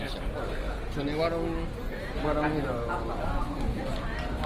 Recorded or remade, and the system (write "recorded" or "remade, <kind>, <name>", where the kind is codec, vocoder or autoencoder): recorded